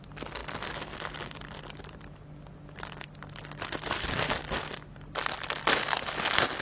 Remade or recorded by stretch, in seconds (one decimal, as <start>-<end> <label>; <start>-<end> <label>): 0.0-6.6 recorded